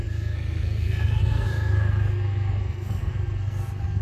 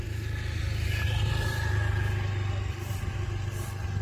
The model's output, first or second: first